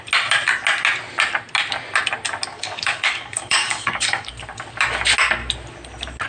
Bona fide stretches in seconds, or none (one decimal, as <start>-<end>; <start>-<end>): 0.0-2.5; 4.3-6.3